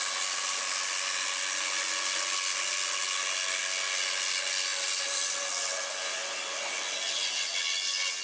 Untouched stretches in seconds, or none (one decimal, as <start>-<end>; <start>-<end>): 0.0-4.7